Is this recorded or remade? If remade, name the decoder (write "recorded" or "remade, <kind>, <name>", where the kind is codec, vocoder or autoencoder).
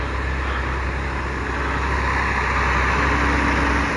recorded